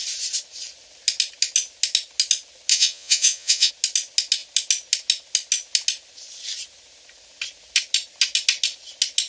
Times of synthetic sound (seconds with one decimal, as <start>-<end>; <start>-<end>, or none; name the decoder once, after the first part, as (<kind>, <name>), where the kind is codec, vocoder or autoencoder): 2.7-3.7 (vocoder, Vocos)

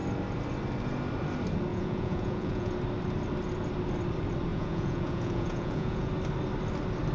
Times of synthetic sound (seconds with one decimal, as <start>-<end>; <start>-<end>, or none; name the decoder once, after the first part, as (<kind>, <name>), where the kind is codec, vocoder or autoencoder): 1.7-2.7 (vocoder, Vocos); 4.5-6.1

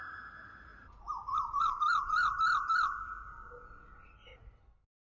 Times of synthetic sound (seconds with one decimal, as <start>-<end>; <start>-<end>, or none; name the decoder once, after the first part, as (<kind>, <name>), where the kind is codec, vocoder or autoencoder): none